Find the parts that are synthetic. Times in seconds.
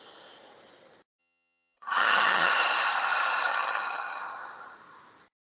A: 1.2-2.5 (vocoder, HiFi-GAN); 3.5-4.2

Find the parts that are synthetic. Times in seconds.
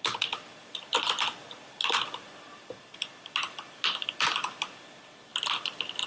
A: none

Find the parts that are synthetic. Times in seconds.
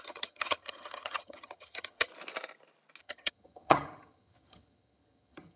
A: 0.0-2.1 (vocoder, HiFi-GAN); 3.0-5.6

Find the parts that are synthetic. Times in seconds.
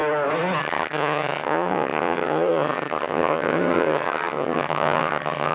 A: 0.6-5.5 (vocoder, HiFi-GAN)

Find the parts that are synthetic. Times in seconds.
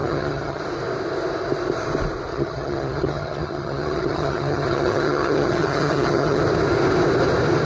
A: 0.0-0.6 (vocoder, HiFi-GAN); 2.3-6.4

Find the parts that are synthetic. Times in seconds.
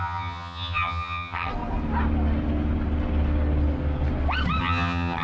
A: 0.0-1.5 (vocoder, HiFi-GAN); 4.6-5.2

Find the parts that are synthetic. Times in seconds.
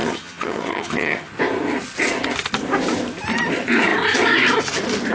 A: 0.0-1.3 (vocoder, HiFi-GAN)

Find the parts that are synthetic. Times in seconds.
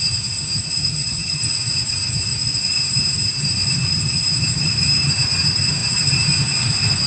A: 0.8-1.4 (vocoder, HiFi-GAN)